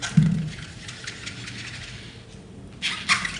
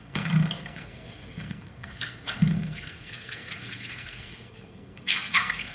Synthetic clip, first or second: second